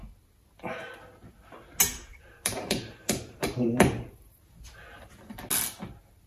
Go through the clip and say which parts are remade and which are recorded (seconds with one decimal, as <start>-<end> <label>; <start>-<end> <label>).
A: 0.0-2.1 recorded; 2.1-5.0 remade; 5.0-6.3 recorded